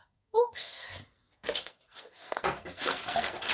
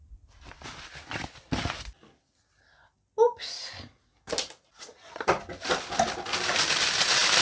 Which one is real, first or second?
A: second